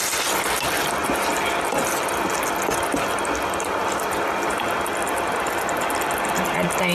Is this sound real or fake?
real